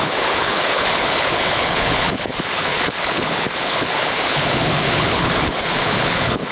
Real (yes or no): no